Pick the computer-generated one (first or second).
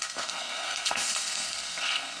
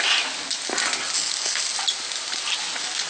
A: first